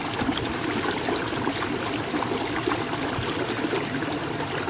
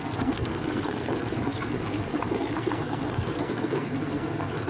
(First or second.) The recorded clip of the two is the first